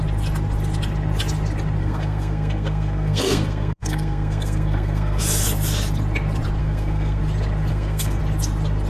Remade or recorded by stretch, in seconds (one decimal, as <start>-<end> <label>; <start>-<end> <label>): 0.0-1.8 recorded; 1.8-5.2 remade; 5.2-6.6 recorded; 6.6-7.2 remade; 7.2-7.7 recorded; 7.7-8.2 remade; 8.2-8.9 recorded